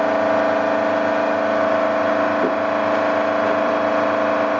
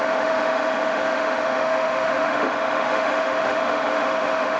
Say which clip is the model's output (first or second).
second